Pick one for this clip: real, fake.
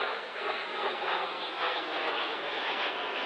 fake